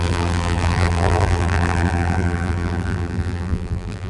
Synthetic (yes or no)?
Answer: yes